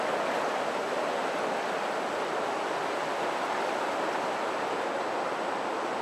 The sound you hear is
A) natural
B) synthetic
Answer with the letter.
A